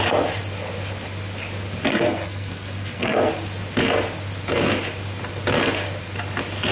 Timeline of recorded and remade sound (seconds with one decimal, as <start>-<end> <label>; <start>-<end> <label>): 0.0-1.9 recorded; 1.9-3.3 remade; 3.3-6.7 recorded